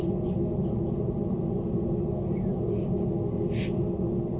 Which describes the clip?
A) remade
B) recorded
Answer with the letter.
B